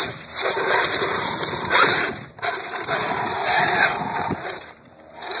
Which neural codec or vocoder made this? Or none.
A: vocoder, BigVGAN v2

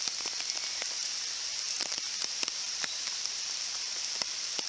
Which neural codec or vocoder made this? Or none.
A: vocoder, BigVGAN v2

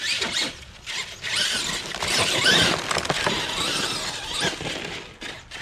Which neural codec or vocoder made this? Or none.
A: none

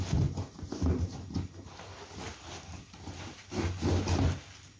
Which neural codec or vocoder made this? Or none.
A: none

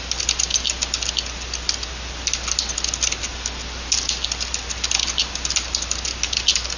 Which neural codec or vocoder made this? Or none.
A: none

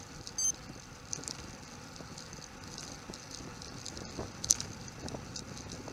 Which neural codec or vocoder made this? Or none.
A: none